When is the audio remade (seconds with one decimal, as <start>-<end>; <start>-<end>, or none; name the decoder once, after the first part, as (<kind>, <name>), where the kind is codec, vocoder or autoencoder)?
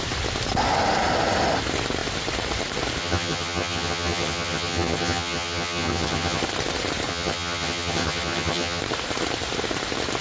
3.0-6.4 (vocoder, HiFi-GAN); 7.1-8.8